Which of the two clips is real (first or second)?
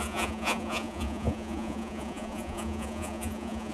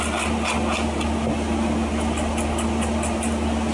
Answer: second